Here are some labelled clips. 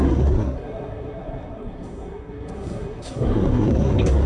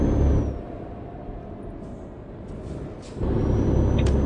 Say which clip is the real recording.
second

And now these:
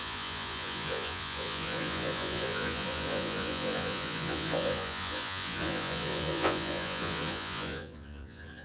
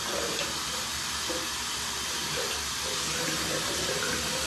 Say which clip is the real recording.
second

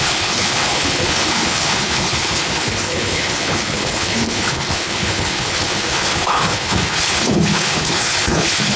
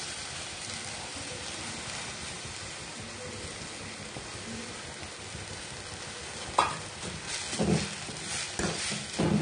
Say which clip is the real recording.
second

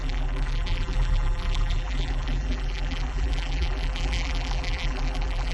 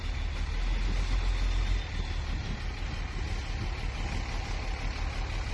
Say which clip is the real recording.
second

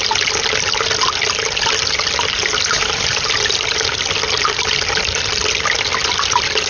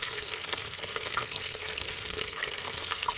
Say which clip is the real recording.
first